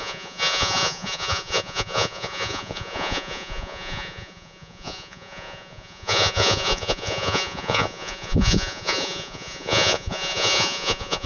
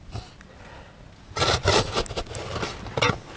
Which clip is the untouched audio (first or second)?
second